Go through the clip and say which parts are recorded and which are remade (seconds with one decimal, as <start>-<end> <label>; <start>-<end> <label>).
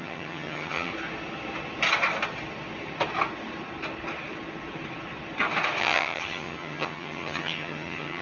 0.0-0.9 remade; 0.9-5.8 recorded; 5.8-8.2 remade